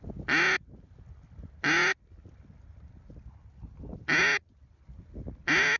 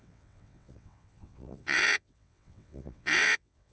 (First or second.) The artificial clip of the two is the second